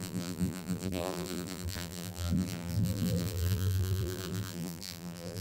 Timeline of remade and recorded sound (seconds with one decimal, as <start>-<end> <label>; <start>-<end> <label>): 0.0-5.4 remade